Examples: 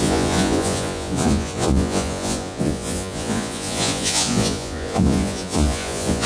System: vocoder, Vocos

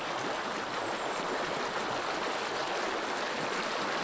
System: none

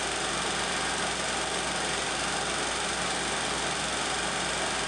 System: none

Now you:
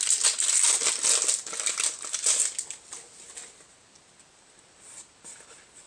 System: none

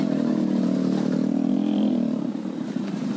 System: vocoder, BigVGAN v2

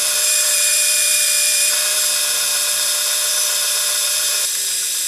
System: vocoder, BigVGAN v2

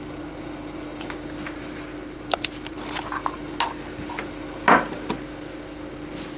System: none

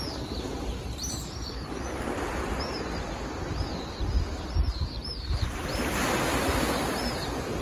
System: none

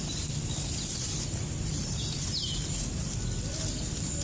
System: vocoder, BigVGAN v2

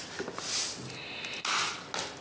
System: none